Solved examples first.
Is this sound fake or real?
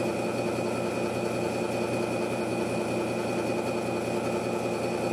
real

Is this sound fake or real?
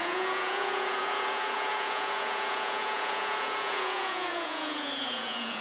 fake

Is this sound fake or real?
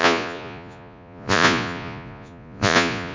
fake